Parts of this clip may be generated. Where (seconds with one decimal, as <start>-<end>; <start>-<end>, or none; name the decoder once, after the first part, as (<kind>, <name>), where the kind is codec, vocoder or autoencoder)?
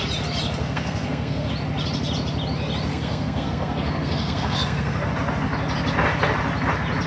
0.6-1.5 (codec, SNAC); 2.9-5.1